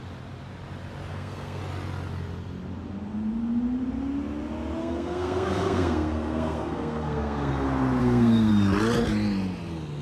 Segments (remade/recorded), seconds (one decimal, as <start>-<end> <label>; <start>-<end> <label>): 0.0-1.1 recorded; 1.1-1.6 remade; 1.6-4.8 recorded; 4.8-7.5 remade; 7.5-8.0 recorded; 8.0-8.5 remade; 8.5-10.0 recorded